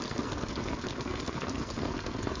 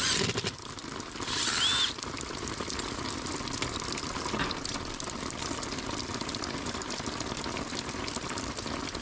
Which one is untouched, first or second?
second